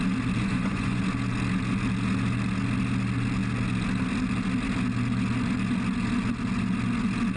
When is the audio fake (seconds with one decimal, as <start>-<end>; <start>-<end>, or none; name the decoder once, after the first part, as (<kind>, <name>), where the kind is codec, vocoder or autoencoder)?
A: 0.4-1.0 (vocoder, Vocos)